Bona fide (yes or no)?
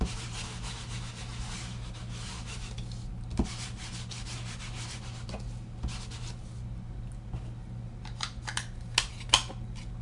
yes